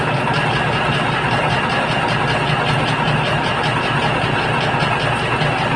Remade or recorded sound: recorded